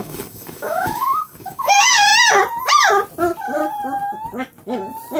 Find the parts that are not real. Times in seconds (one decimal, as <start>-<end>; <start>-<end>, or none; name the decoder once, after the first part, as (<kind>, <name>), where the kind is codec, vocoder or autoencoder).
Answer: 0.0-2.1 (codec, DAC)